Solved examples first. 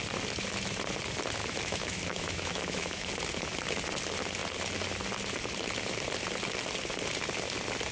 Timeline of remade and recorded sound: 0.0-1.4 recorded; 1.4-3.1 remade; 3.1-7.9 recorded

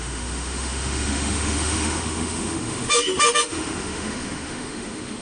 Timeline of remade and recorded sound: 0.0-5.2 remade

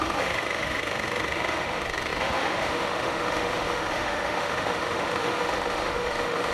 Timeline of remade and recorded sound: 0.0-6.5 remade

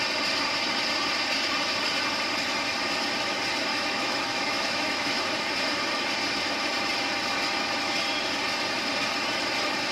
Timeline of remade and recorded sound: 0.0-3.7 recorded; 3.7-5.2 remade; 5.2-9.9 recorded